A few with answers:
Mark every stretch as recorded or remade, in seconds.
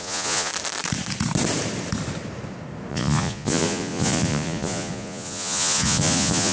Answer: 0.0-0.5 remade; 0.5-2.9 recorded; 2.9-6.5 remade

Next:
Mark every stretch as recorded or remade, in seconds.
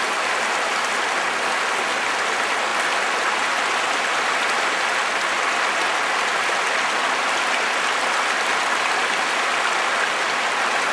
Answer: 0.0-10.9 recorded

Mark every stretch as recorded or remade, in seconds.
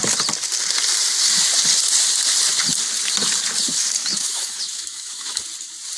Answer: 0.0-4.0 recorded; 4.0-5.4 remade; 5.4-6.0 recorded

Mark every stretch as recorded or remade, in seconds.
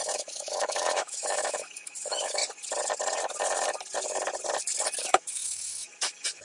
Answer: 0.0-2.4 remade; 2.4-5.0 recorded; 5.0-6.4 remade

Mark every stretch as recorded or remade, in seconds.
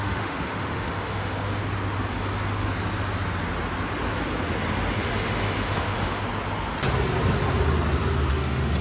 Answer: 0.0-1.6 remade; 1.6-5.0 recorded; 5.0-6.2 remade; 6.2-8.3 recorded; 8.3-8.8 remade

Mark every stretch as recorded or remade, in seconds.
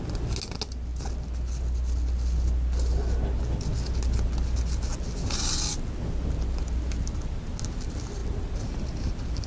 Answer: 0.0-9.5 recorded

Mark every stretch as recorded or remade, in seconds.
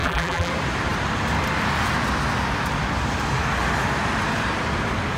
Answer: 0.0-0.5 remade; 0.5-5.2 recorded